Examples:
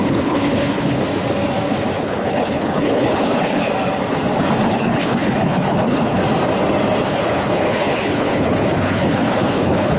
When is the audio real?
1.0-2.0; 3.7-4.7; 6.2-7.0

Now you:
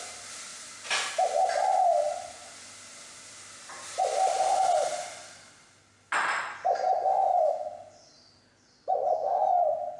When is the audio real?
0.0-10.0

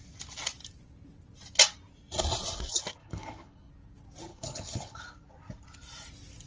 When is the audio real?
0.0-3.0; 3.7-4.3; 5.0-6.5